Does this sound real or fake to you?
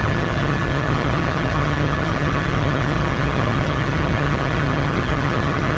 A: fake